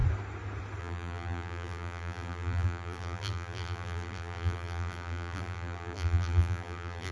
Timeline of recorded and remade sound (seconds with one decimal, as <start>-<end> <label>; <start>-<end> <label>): 0.0-0.8 recorded; 0.8-7.1 remade